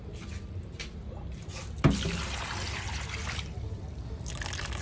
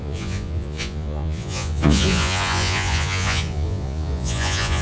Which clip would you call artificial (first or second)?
second